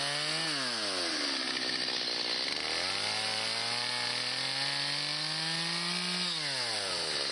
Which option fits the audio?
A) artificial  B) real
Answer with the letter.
B